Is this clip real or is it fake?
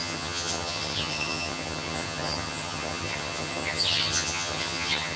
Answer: fake